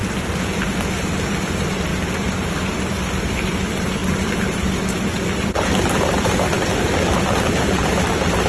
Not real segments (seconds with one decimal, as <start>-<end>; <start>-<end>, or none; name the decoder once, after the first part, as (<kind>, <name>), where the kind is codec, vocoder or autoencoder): 1.3-1.9 (vocoder, BigVGAN v2); 2.5-8.5